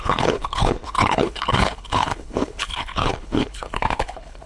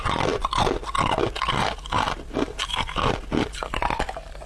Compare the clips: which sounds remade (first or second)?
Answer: first